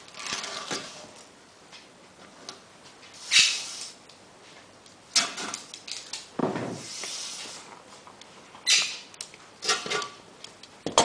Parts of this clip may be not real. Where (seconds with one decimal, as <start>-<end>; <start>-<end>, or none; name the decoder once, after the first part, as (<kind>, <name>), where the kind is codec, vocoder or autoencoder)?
6.4-7.0 (vocoder, BigVGAN v2)